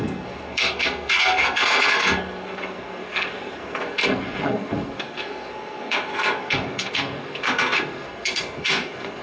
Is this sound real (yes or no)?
no